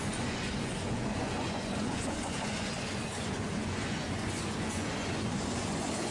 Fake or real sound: fake